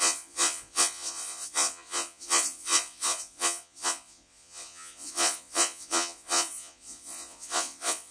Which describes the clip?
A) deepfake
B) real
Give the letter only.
A